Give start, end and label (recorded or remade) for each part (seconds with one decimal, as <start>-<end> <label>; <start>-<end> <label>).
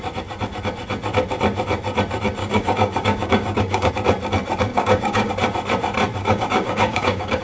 0.0-2.4 recorded; 2.4-3.9 remade; 3.9-4.7 recorded; 4.7-5.3 remade; 5.3-6.2 recorded; 6.2-7.4 remade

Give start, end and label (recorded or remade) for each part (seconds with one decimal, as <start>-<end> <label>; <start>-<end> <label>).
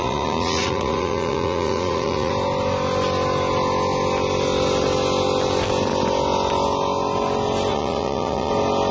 0.0-2.3 remade; 2.3-7.7 recorded; 7.7-8.5 remade; 8.5-8.9 recorded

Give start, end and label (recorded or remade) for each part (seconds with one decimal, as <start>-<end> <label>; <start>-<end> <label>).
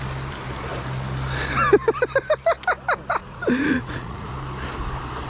0.0-3.2 recorded; 3.2-4.3 remade; 4.3-5.3 recorded